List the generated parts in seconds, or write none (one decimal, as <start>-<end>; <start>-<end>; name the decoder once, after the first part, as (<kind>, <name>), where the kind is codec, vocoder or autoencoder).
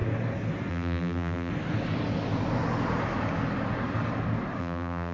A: 0.7-1.5 (vocoder, BigVGAN v2); 4.6-5.1